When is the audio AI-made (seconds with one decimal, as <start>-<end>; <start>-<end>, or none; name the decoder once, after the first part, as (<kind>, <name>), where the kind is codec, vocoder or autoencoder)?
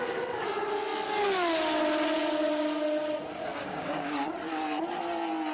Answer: 3.5-4.3 (codec, DAC)